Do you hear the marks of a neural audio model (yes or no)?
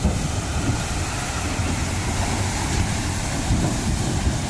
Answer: no